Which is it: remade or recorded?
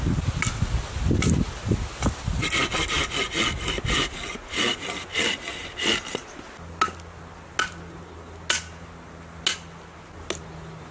recorded